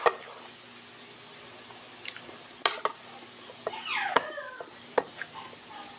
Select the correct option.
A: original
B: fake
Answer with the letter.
A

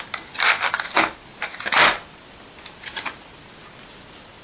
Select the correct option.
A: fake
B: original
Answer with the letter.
B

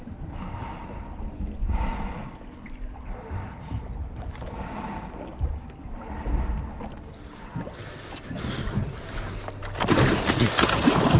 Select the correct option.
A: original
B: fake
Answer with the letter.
A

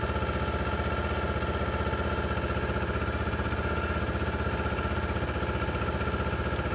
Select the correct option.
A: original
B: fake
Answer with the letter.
A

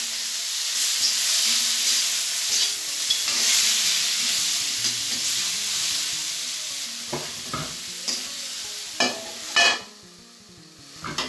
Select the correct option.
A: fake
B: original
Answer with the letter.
B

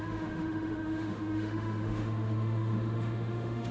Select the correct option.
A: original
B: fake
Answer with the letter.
B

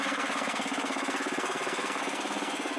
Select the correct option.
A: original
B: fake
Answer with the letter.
B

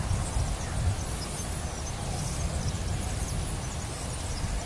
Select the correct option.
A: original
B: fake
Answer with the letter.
A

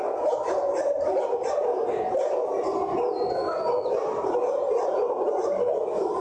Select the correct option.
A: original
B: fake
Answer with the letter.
A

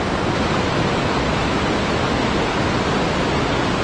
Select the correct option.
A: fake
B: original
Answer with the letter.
B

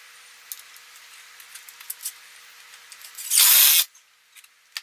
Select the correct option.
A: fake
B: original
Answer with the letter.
B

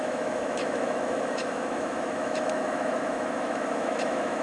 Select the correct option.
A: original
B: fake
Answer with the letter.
B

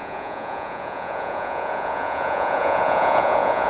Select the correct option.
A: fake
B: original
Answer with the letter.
A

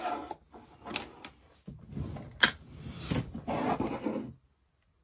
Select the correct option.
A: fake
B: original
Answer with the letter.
B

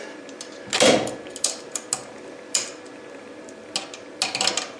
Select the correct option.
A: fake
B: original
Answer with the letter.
B